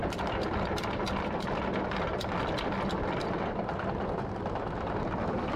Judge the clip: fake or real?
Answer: real